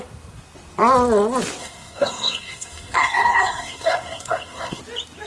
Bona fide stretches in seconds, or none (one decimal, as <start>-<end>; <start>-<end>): 0.0-1.6; 4.8-5.3